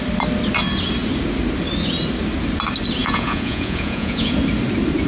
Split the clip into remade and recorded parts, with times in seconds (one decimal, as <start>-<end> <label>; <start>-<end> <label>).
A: 0.0-3.0 recorded; 3.0-4.3 remade; 4.3-5.1 recorded